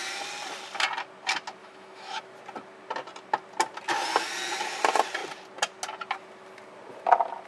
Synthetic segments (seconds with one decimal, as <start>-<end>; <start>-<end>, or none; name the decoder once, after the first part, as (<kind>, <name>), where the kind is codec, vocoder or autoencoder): 1.6-2.2 (autoencoder, DAC-VAE)